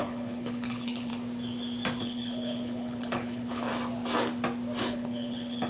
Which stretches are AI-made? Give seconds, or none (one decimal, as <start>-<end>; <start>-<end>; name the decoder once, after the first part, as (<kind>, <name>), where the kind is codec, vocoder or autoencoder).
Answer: 0.0-1.1 (codec, HILCodec); 2.0-3.7; 4.8-5.7